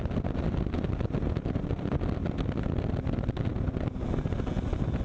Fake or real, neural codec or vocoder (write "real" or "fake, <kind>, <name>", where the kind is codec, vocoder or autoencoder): real